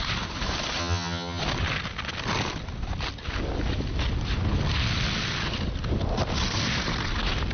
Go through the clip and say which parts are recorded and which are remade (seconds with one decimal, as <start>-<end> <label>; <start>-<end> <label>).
0.0-0.8 recorded; 0.8-1.4 remade; 1.4-7.5 recorded